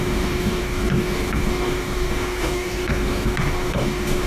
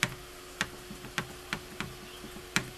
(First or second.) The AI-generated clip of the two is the first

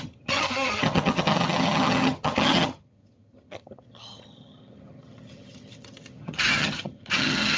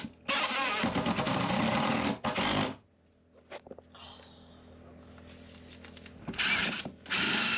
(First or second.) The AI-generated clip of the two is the first